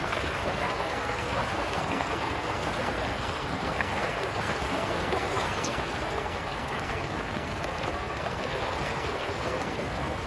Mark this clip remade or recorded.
remade